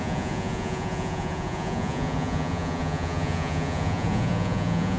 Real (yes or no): no